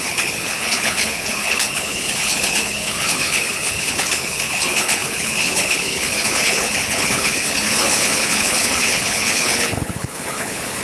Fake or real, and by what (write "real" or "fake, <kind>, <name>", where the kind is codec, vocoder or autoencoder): fake, codec, HILCodec